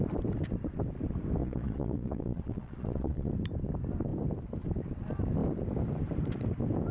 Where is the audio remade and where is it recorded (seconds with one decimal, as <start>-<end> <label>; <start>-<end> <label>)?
0.0-1.4 recorded; 1.4-3.3 remade; 3.3-6.9 recorded

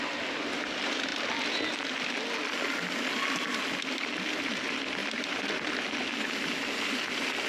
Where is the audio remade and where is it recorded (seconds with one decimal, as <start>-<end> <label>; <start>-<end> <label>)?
0.0-5.0 recorded; 5.0-6.5 remade; 6.5-7.5 recorded

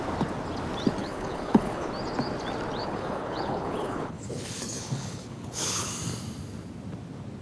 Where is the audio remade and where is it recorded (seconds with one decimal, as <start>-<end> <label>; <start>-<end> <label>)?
0.0-1.0 recorded; 1.0-1.9 remade; 1.9-2.8 recorded; 2.8-5.9 remade; 5.9-7.4 recorded

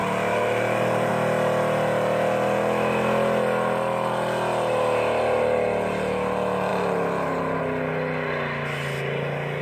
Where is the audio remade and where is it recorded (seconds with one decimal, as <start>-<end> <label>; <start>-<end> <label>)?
0.0-1.1 remade; 1.1-6.7 recorded; 6.7-7.6 remade; 7.6-9.6 recorded

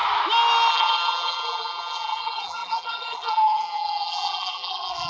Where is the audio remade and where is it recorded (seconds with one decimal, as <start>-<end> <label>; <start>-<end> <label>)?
0.0-0.7 recorded; 0.7-5.1 remade

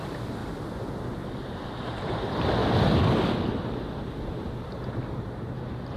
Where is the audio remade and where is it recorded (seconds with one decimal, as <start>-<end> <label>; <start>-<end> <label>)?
0.0-0.4 remade; 0.4-1.8 recorded; 1.8-2.6 remade; 2.6-4.2 recorded; 4.2-6.0 remade

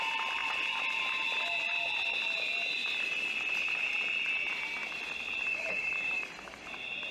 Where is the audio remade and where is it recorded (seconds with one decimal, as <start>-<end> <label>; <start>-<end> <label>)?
0.0-0.4 recorded; 0.4-1.0 remade; 1.0-4.8 recorded; 4.8-5.7 remade; 5.7-7.1 recorded

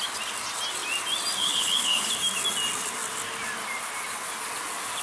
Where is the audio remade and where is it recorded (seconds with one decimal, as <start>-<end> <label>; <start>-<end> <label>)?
0.0-1.4 recorded; 1.4-2.1 remade; 2.1-5.0 recorded